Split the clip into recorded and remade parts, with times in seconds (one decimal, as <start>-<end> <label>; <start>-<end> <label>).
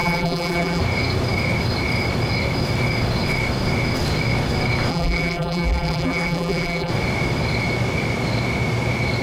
0.0-0.8 remade; 0.8-4.9 recorded; 4.9-6.9 remade; 6.9-9.2 recorded